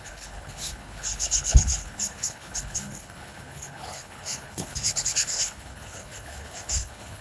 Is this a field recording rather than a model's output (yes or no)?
no